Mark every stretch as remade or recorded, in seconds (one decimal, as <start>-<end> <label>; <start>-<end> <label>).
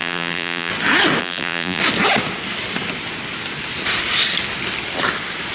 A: 0.0-0.7 remade; 0.7-1.2 recorded; 1.2-1.8 remade; 1.8-5.5 recorded